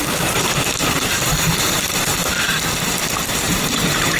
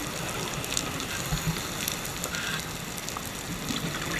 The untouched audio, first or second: second